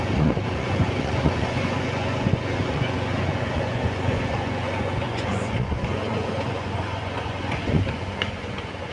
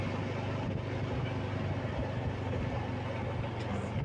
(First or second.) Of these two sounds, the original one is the second